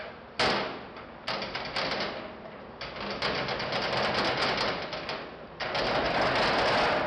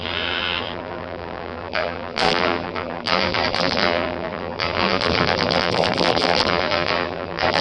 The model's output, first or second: second